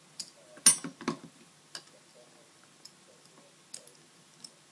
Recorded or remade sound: recorded